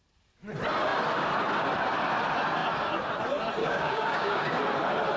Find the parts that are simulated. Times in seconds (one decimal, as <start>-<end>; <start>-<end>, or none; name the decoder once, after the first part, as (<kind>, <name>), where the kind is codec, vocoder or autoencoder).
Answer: 3.6-4.6 (codec, DAC)

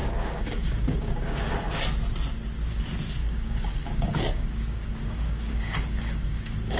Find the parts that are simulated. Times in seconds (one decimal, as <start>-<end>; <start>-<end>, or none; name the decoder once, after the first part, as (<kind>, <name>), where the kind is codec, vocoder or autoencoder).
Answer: 0.0-1.5 (codec, DAC); 3.2-6.8

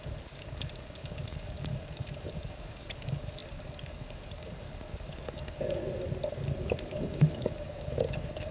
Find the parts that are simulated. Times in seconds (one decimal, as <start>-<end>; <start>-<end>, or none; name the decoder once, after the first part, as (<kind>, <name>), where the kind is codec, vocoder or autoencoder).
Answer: 0.0-5.8 (codec, DAC); 6.3-8.5

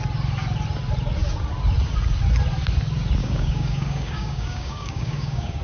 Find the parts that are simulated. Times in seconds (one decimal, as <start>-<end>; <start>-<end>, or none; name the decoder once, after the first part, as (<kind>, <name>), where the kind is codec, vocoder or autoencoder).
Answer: 3.2-5.6 (codec, DAC)

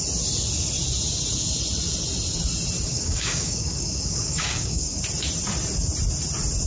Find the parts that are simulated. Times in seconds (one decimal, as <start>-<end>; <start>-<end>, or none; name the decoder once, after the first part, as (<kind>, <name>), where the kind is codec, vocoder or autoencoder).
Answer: 2.9-5.0 (codec, DAC)

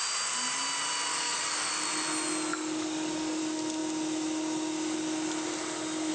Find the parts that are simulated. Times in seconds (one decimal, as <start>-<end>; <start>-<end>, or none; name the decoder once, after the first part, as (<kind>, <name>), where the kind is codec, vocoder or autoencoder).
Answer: 1.1-1.7 (codec, DAC); 2.5-3.4

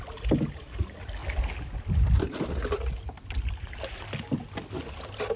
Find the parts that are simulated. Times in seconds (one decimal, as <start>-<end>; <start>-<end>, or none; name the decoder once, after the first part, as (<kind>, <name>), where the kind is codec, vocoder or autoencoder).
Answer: none